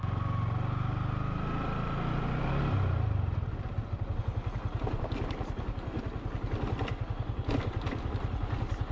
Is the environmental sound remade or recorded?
recorded